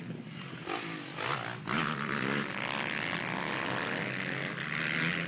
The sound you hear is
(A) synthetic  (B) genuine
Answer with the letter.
B